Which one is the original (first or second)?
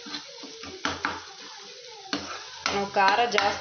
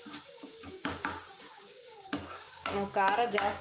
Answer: first